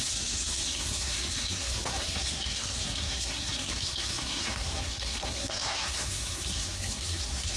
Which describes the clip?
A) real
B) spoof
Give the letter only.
B